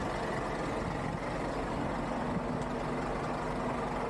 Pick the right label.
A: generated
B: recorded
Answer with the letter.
B